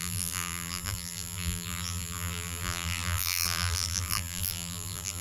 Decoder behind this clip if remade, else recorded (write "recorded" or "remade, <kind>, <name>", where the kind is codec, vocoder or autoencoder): remade, vocoder, BigVGAN v2